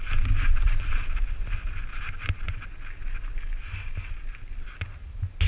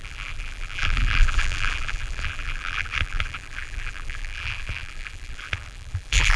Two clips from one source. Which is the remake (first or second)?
second